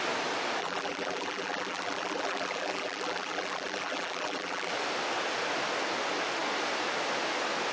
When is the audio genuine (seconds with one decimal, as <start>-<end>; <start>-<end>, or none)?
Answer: 0.0-0.6; 4.7-7.7